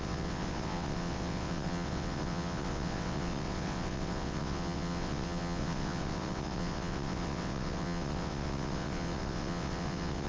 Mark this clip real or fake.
fake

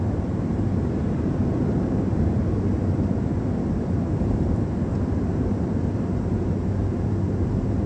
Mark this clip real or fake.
fake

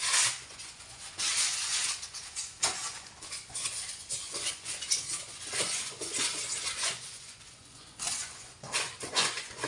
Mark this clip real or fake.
fake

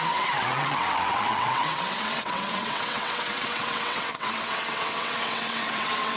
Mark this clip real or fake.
fake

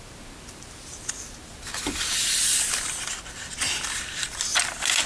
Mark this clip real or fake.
real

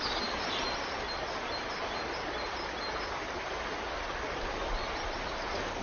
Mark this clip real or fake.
real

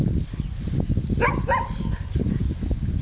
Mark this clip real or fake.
real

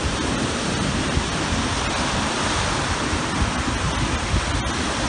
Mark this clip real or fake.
real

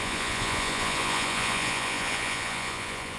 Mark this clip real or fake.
fake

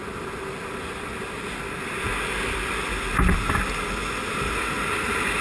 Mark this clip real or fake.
real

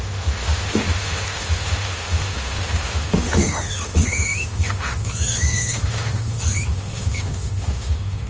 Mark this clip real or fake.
fake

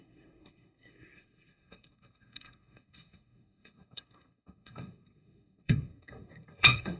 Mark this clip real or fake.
fake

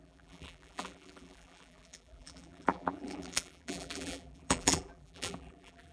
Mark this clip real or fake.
fake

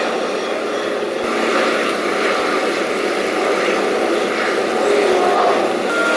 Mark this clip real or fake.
real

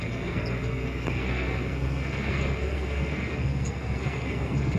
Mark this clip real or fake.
fake